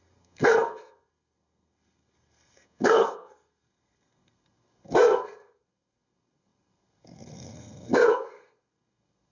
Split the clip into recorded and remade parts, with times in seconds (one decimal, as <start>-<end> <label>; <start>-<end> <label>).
0.0-9.3 remade